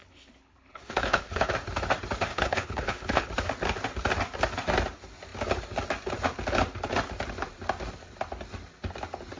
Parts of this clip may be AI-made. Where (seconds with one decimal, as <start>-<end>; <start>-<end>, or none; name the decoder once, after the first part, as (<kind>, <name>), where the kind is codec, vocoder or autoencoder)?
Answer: 0.0-1.5 (codec, HILCodec); 2.3-3.3